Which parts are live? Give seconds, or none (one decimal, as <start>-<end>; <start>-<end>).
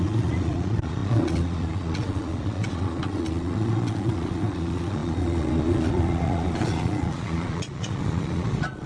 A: none